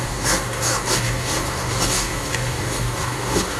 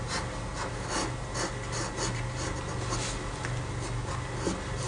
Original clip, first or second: second